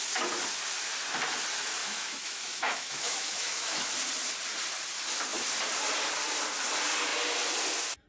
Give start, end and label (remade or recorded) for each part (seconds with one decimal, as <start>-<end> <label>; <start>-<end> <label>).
0.0-1.8 recorded; 1.8-3.9 remade; 3.9-8.1 recorded